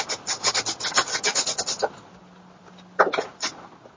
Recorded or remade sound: recorded